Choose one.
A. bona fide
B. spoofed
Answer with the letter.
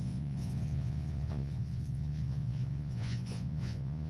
B